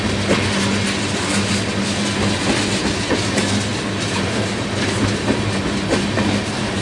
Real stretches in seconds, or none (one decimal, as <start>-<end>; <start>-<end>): 0.0-3.7; 5.3-6.8